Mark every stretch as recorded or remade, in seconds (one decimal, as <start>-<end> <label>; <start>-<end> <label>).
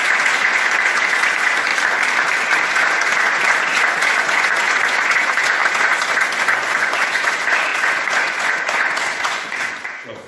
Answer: 0.0-1.7 remade; 1.7-2.7 recorded; 2.7-10.3 remade